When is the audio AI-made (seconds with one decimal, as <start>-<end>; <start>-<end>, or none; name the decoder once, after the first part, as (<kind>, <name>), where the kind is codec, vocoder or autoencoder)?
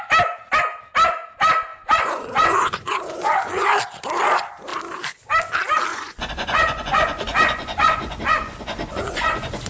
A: 1.7-3.8 (vocoder, Vocos); 5.9-9.7